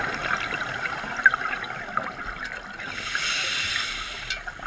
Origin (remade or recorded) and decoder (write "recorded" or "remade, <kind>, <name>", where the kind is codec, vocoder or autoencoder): recorded